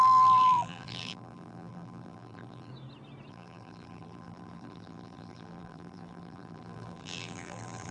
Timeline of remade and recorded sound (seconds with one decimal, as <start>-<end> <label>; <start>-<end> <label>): 0.0-2.7 remade; 2.7-3.3 recorded; 3.3-7.9 remade